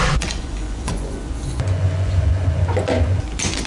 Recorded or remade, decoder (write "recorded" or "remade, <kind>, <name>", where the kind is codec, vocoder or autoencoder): remade, vocoder, Vocos